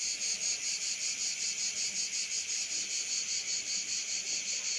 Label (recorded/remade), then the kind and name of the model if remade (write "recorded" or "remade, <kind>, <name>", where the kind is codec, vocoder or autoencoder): recorded